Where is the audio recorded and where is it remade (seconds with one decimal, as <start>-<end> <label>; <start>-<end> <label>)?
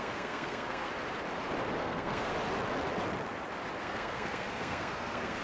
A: 0.0-0.9 remade; 0.9-1.8 recorded; 1.8-2.3 remade; 2.3-3.8 recorded; 3.8-5.4 remade